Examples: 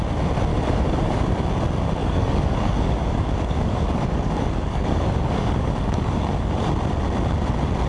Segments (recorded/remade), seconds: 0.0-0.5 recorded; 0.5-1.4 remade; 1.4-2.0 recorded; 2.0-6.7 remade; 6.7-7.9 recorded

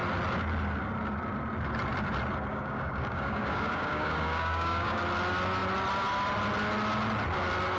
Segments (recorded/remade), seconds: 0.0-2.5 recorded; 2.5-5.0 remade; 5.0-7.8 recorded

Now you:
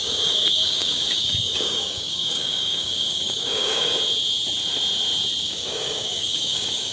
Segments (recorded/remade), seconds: 0.0-3.9 remade; 3.9-5.4 recorded; 5.4-6.9 remade

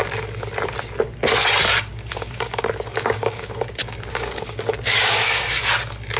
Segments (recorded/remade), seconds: 0.0-1.9 recorded; 1.9-5.6 remade; 5.6-6.2 recorded

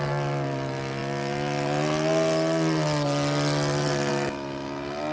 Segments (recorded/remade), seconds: 0.0-5.1 recorded

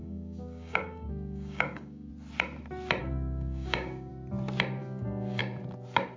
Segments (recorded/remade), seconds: 0.0-2.1 remade; 2.1-3.0 recorded; 3.0-4.1 remade; 4.1-4.8 recorded; 4.8-5.4 remade; 5.4-6.2 recorded

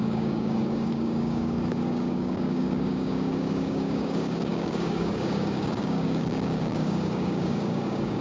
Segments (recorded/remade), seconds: 0.0-8.2 remade